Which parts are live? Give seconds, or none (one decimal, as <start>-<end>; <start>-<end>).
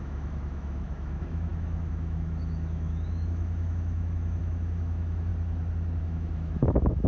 5.3-6.0